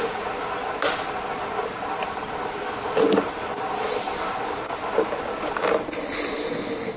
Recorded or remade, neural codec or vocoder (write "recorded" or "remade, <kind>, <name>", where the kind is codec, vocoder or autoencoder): recorded